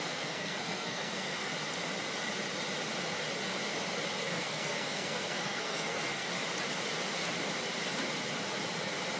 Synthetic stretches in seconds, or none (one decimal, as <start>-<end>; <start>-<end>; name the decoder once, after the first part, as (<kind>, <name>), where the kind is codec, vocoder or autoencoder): 0.0-1.5 (codec, SNAC); 4.2-6.3